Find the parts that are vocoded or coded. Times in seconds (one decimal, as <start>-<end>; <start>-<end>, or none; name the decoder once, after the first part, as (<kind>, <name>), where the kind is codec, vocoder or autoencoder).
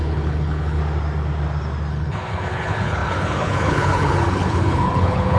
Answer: 0.0-0.8 (codec, HILCodec); 1.9-5.4